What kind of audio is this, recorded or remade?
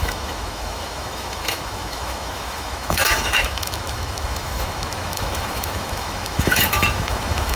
remade